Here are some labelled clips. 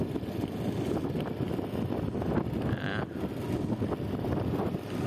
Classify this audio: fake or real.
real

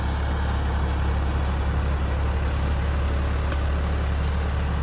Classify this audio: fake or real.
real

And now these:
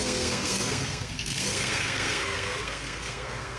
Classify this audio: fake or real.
fake